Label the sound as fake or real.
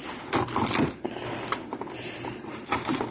real